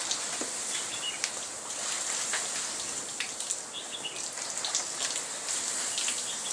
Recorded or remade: recorded